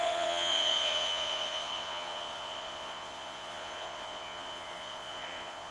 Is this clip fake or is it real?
fake